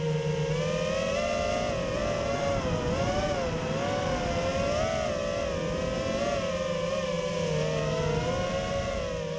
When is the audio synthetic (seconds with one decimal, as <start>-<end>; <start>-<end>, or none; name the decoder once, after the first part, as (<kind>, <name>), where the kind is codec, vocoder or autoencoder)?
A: none